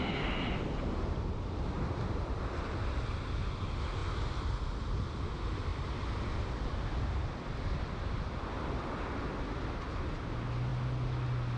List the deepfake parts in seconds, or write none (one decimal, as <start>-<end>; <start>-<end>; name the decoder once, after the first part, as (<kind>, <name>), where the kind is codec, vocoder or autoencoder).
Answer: none